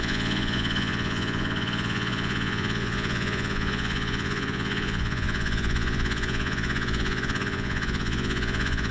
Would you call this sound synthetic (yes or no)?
yes